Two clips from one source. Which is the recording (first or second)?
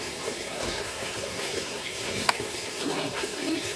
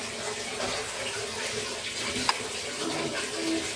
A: second